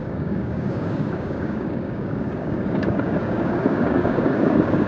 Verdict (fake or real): fake